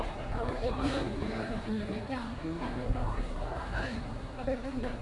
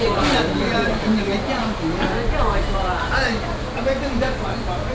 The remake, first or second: first